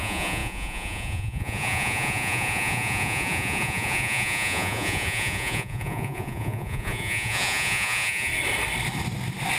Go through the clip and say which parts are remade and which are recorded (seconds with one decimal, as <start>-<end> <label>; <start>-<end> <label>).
0.0-8.3 remade; 8.3-9.6 recorded